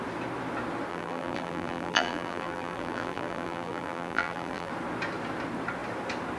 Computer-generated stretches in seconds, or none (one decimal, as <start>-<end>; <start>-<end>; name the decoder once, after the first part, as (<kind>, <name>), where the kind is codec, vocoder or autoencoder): 0.9-4.7 (vocoder, BigVGAN v2)